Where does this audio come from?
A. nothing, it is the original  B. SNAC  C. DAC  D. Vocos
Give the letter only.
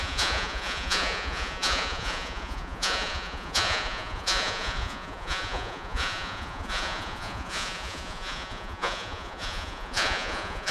D